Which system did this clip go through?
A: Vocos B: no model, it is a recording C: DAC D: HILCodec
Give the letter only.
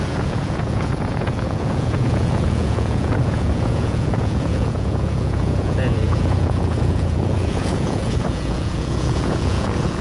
A